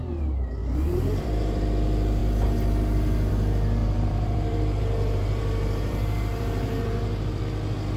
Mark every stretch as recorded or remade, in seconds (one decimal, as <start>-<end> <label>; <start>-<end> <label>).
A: 0.0-0.6 recorded; 0.6-1.6 remade; 1.6-3.8 recorded; 3.8-7.4 remade; 7.4-8.0 recorded